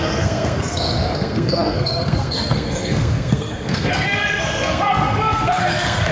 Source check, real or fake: fake